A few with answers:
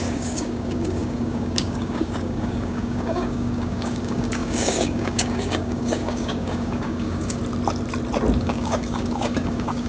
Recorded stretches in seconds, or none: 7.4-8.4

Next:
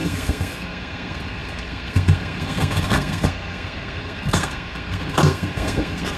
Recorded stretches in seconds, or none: none

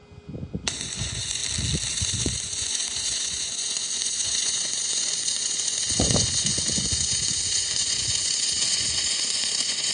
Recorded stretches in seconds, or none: 0.0-0.7; 1.4-1.9